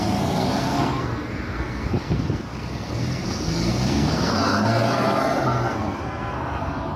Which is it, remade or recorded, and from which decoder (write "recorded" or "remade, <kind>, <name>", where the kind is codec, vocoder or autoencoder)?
remade, codec, SNAC